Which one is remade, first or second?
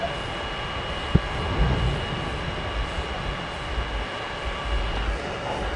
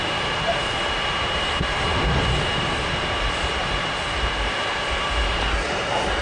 second